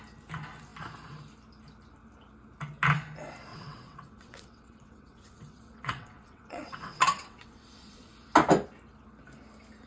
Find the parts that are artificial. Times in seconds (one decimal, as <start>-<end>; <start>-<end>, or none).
3.5-8.1